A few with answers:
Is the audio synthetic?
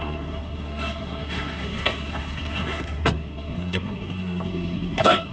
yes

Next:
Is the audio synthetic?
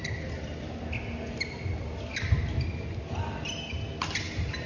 no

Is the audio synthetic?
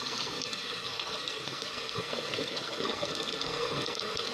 yes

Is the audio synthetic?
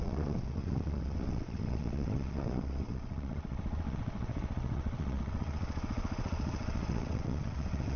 yes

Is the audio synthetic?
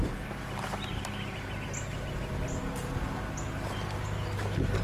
no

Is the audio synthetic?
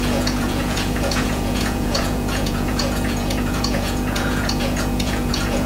yes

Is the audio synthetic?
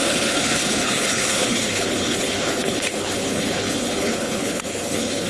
yes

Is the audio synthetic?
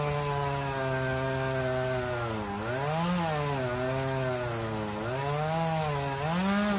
no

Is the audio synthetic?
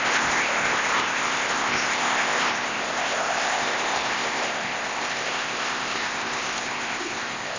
yes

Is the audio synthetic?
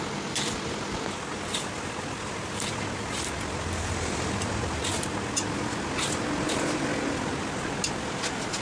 no